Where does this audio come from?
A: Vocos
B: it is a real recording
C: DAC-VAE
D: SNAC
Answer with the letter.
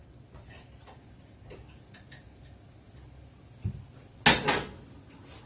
B